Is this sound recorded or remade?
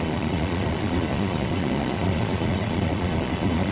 remade